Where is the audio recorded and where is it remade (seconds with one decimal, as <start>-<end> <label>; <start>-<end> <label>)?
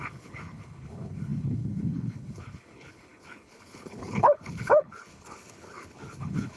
0.0-6.6 remade